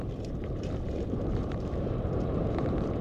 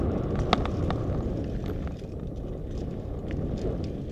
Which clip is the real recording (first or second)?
second